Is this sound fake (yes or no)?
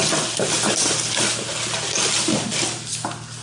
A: no